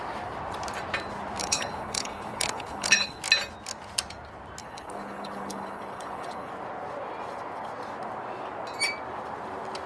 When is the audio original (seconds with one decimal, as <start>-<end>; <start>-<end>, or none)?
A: 0.0-1.4; 3.2-4.6; 6.5-9.9